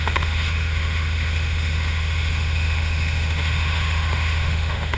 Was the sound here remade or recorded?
remade